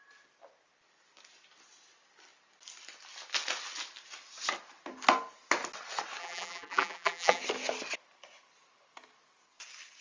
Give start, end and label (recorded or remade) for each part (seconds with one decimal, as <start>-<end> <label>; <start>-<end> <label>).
0.0-6.2 recorded; 6.2-7.4 remade; 7.4-10.0 recorded

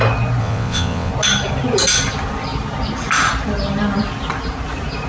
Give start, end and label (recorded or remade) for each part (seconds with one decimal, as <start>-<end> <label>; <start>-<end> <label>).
0.0-0.4 recorded; 0.4-1.1 remade; 1.1-5.1 recorded

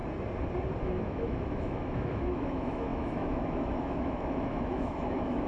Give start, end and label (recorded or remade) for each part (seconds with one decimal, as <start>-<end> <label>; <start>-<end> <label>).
0.0-0.8 recorded; 0.8-5.5 remade